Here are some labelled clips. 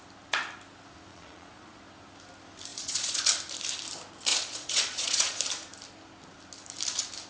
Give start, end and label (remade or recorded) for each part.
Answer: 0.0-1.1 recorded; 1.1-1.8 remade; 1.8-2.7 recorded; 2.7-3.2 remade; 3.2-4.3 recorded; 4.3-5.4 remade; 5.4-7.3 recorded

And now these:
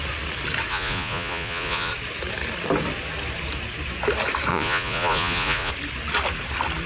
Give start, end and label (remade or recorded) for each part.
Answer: 0.0-0.7 recorded; 0.7-1.9 remade; 1.9-4.5 recorded; 4.5-5.7 remade; 5.7-6.9 recorded

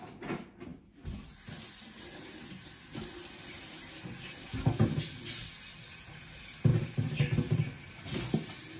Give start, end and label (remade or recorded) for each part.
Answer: 0.0-8.8 recorded

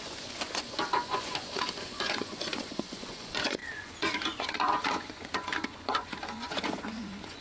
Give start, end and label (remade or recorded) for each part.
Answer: 0.0-7.4 remade

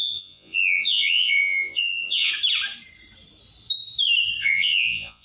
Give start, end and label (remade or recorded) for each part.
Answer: 0.0-2.3 remade; 2.3-4.4 recorded; 4.4-5.2 remade

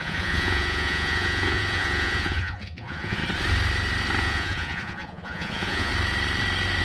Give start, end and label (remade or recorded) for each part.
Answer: 0.0-3.2 remade; 3.2-4.2 recorded; 4.2-5.9 remade; 5.9-6.8 recorded